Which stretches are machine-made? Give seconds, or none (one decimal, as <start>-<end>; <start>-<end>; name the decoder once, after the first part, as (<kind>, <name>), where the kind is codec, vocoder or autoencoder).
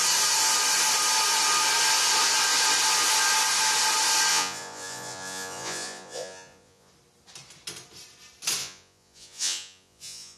4.3-6.9 (vocoder, Vocos); 8.6-10.4